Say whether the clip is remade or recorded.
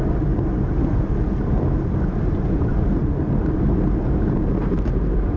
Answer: recorded